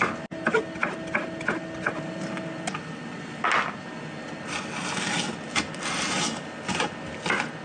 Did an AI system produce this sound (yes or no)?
no